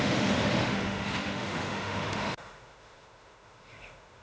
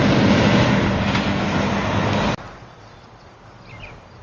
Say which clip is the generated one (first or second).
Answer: first